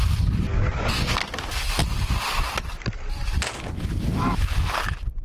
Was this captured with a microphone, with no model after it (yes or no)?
yes